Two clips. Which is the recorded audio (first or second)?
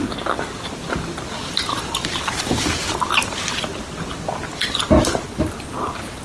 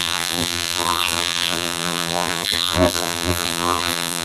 first